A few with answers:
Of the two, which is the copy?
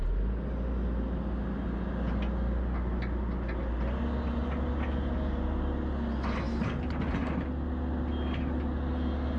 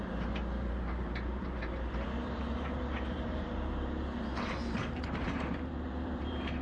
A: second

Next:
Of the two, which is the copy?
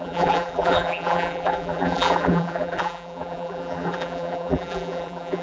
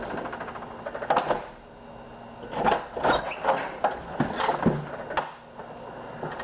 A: first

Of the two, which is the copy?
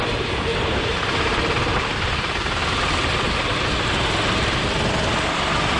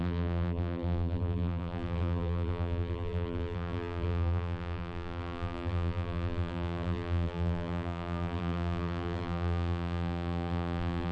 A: second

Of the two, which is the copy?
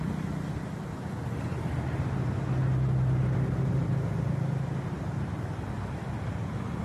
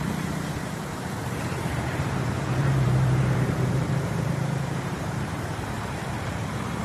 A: second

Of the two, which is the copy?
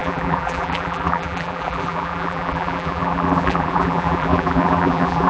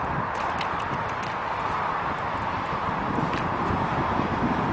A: first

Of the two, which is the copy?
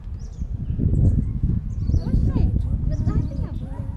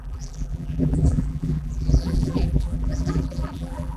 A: second